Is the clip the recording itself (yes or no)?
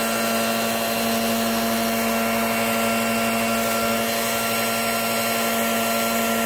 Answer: yes